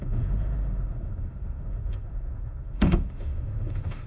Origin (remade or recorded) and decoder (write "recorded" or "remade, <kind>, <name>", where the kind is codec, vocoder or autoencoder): remade, autoencoder, DAC-VAE